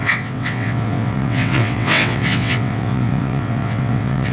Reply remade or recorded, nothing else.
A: remade